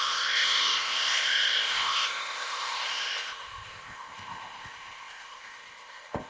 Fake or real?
fake